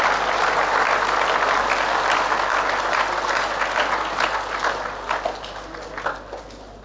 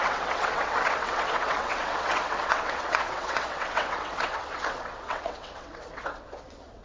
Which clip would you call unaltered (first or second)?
first